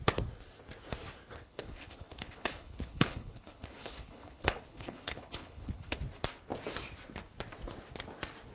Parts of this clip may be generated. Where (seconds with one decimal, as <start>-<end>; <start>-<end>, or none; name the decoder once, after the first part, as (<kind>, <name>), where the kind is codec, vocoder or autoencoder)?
1.4-6.0 (codec, HILCodec)